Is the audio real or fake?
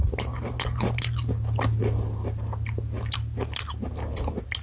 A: real